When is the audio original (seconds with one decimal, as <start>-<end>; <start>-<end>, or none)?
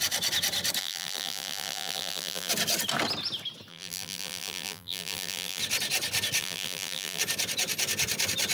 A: 0.0-0.8; 2.5-3.7; 5.6-6.4; 7.2-8.5